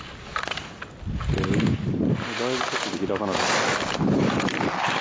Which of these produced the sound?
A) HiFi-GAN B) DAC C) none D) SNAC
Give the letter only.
C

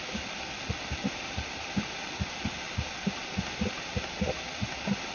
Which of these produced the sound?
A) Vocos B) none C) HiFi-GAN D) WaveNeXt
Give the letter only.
B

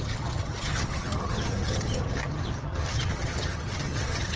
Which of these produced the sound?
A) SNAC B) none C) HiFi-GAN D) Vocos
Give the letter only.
C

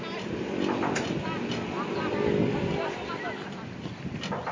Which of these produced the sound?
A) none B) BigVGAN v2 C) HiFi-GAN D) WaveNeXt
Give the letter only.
A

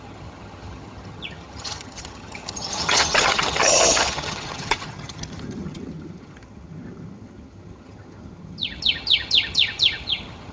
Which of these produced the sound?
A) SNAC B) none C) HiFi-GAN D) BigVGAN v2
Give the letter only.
C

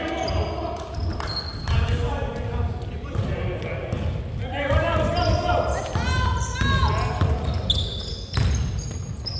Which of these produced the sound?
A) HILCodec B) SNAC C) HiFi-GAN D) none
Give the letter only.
D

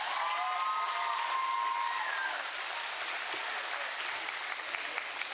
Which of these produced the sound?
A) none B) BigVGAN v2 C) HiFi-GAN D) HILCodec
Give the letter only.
A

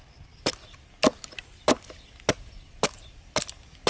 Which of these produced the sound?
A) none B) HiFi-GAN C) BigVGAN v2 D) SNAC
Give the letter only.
A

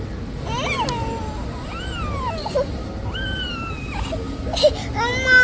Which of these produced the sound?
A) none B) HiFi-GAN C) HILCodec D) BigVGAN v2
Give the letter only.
A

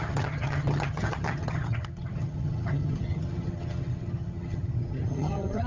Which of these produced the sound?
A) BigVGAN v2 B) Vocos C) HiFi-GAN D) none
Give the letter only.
C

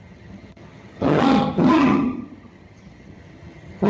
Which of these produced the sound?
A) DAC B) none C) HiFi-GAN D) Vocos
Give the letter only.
C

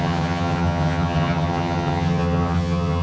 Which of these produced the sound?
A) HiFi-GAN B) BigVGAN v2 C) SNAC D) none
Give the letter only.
A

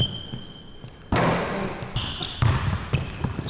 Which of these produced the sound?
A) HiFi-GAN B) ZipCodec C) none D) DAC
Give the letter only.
C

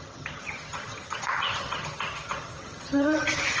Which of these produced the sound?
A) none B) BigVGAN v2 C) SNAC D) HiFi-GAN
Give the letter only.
D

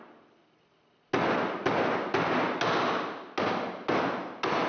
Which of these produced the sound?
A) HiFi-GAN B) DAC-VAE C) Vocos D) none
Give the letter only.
D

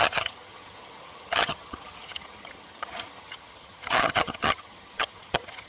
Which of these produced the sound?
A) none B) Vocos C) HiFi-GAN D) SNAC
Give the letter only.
C